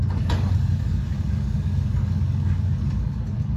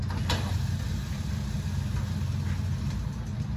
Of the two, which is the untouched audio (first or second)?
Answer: second